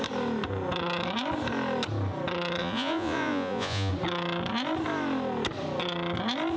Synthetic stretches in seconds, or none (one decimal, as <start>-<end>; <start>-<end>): 2.6-3.9